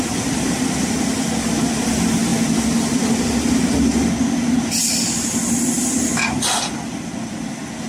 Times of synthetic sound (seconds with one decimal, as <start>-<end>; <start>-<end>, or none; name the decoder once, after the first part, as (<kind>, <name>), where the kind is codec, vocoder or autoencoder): none